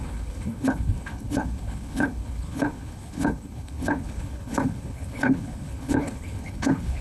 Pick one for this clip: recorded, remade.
remade